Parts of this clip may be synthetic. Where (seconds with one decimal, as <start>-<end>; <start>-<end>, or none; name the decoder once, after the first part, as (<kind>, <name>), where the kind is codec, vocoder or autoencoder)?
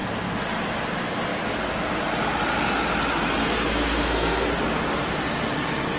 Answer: 3.4-4.5 (codec, SNAC)